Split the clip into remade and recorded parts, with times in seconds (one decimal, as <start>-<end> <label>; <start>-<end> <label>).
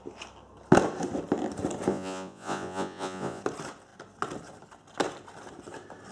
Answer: 0.0-1.9 recorded; 1.9-3.4 remade; 3.4-6.1 recorded